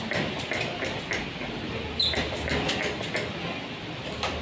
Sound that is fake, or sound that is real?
real